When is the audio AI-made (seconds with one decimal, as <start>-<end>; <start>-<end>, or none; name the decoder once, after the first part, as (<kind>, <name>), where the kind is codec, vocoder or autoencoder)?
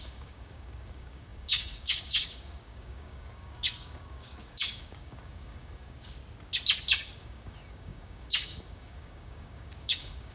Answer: 0.0-6.2 (codec, DAC); 6.8-10.3